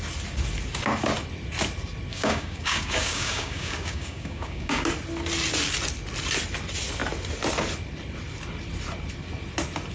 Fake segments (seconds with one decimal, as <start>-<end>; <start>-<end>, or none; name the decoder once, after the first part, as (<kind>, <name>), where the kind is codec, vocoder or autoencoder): 2.1-4.9 (codec, DAC)